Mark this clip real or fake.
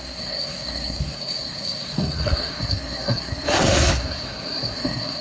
fake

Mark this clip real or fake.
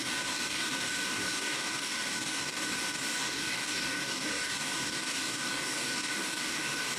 fake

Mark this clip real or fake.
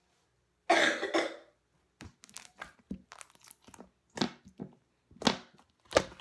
real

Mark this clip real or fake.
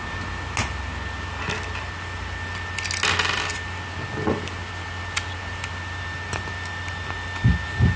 real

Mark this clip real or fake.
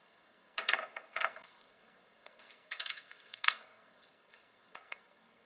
fake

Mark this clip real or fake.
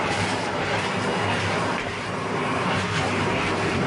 fake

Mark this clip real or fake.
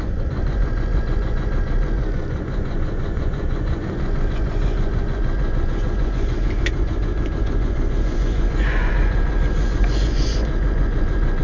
fake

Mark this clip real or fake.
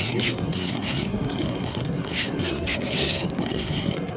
fake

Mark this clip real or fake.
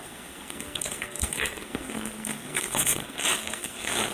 fake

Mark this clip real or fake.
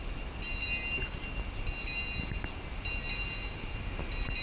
real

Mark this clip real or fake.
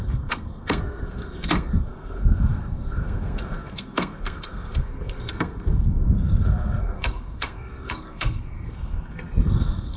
fake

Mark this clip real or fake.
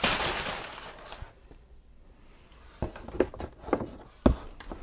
real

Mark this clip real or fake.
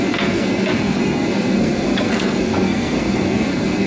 fake